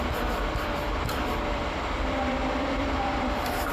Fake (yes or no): yes